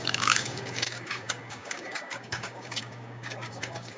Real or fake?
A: fake